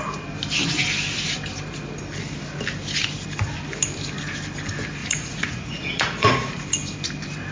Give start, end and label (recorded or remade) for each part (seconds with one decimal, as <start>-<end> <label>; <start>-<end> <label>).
0.0-5.0 recorded; 5.0-6.6 remade; 6.6-7.5 recorded